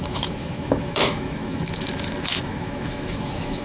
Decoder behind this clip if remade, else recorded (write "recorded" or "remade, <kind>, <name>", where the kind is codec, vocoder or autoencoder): remade, autoencoder, DAC-VAE